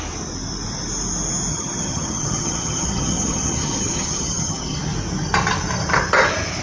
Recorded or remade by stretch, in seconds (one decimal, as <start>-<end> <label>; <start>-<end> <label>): 0.0-1.5 recorded; 1.5-4.8 remade; 4.8-6.6 recorded